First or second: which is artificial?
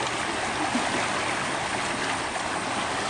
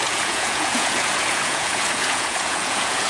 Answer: second